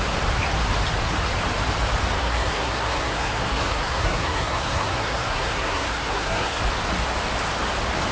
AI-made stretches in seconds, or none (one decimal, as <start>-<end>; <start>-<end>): 2.2-6.6